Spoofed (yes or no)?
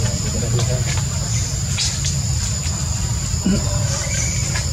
no